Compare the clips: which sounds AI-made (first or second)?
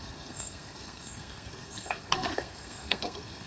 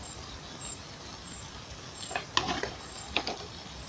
first